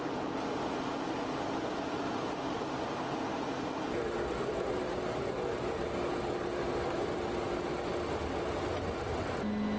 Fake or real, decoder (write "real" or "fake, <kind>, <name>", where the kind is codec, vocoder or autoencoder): real